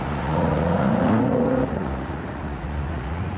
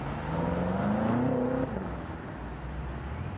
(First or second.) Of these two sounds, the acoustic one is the second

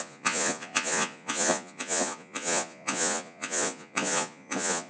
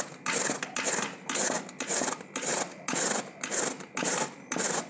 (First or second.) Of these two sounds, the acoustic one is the second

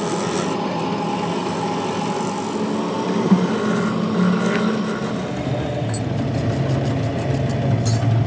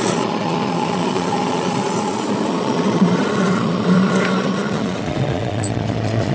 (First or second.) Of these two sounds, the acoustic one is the first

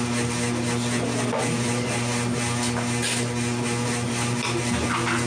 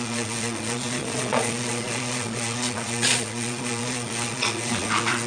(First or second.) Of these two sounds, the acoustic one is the first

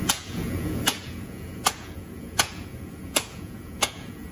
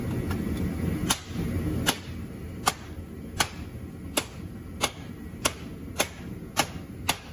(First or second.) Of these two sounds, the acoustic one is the second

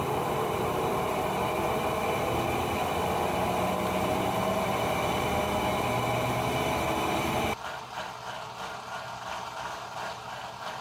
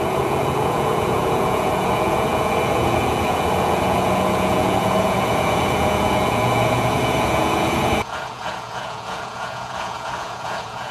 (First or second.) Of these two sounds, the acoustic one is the first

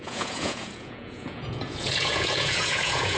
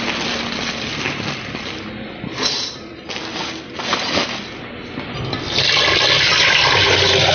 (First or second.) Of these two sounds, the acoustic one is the second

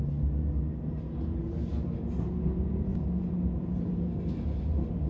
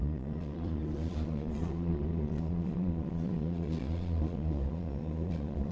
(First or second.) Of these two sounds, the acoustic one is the first